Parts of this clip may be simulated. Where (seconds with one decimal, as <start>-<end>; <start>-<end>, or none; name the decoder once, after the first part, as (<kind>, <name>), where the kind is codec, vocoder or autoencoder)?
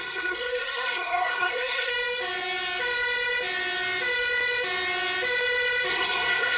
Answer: 0.0-1.9 (codec, SNAC); 5.9-6.6